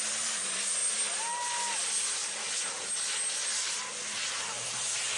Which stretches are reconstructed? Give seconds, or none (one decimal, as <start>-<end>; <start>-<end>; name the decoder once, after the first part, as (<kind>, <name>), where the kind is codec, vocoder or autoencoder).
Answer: none